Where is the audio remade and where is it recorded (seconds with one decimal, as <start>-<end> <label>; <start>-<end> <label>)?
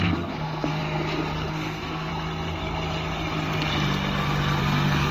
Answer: 0.0-0.8 remade; 0.8-1.5 recorded; 1.5-2.1 remade; 2.1-4.6 recorded; 4.6-5.1 remade